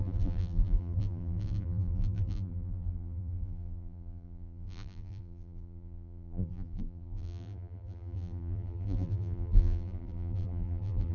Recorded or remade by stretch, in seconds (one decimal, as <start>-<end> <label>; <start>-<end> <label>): 0.0-11.1 remade